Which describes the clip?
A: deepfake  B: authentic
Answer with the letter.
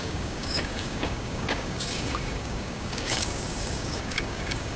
A